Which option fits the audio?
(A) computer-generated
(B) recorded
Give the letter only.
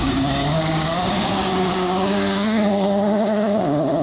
A